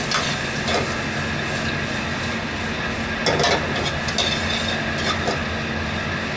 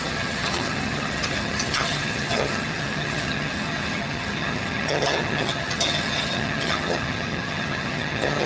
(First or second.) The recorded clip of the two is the first